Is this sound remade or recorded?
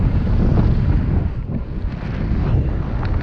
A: recorded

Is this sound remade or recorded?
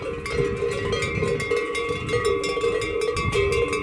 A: recorded